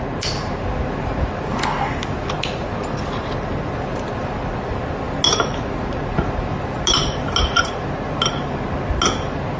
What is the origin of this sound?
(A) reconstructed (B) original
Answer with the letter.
B